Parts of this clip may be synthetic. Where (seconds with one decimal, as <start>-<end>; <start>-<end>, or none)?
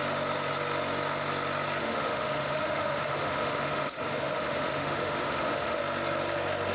1.8-5.8